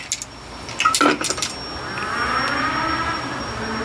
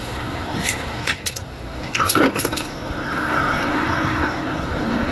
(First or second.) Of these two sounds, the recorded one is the first